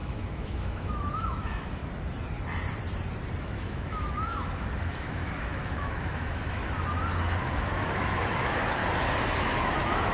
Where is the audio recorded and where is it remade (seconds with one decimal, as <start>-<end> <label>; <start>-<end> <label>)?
0.0-1.8 remade; 1.8-3.4 recorded; 3.4-6.6 remade; 6.6-7.4 recorded; 7.4-8.8 remade; 8.8-9.4 recorded; 9.4-10.1 remade